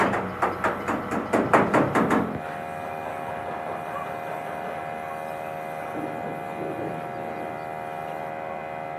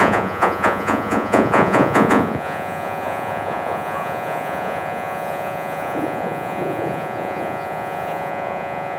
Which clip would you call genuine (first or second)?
first